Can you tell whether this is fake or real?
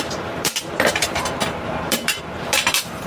fake